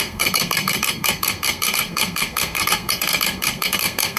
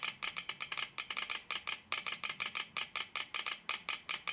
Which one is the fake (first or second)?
first